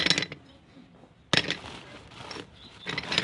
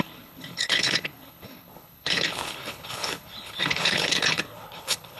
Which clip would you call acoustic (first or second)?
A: first